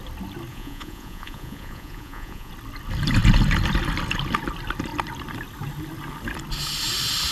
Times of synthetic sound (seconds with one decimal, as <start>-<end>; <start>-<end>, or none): 0.5-2.5